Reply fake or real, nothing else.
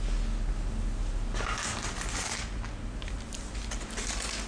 real